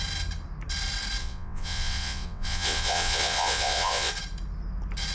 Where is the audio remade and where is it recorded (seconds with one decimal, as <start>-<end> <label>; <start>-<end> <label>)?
0.0-1.2 recorded; 1.2-4.1 remade; 4.1-5.1 recorded